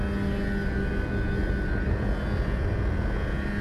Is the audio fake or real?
real